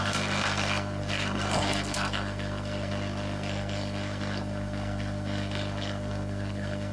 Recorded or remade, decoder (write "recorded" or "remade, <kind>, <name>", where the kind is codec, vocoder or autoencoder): remade, codec, SNAC